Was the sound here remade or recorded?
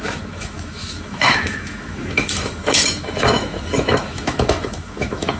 remade